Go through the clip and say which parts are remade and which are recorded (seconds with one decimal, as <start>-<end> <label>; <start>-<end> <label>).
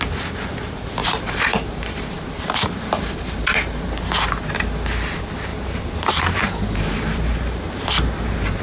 0.0-1.0 recorded; 1.0-3.4 remade; 3.4-5.5 recorded; 5.5-8.6 remade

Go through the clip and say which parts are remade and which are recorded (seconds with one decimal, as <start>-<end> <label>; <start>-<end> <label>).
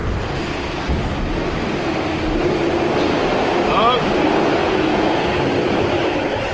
0.0-4.6 recorded; 4.6-5.2 remade; 5.2-6.5 recorded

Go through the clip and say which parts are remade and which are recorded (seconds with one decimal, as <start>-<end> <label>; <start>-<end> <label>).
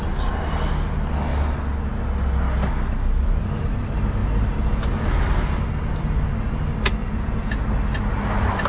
0.0-7.0 recorded; 7.0-7.6 remade; 7.6-8.7 recorded